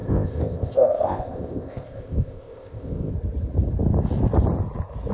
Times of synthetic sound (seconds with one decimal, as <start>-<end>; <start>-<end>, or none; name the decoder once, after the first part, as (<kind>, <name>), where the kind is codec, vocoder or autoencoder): 0.0-3.1 (codec, ZipCodec)